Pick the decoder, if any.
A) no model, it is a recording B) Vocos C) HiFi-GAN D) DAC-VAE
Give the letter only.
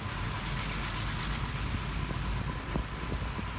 A